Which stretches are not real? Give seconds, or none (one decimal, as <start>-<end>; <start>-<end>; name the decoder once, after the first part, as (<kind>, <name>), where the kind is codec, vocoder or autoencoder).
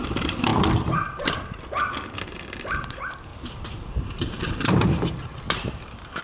3.3-5.4 (vocoder, BigVGAN v2)